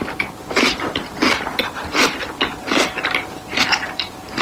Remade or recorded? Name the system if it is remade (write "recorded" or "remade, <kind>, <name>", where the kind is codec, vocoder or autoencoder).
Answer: remade, vocoder, BigVGAN v2